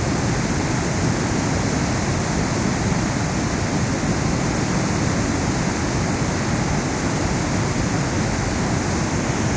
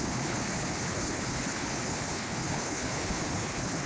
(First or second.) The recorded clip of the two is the first